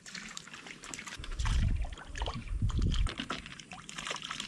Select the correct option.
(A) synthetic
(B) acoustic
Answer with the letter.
A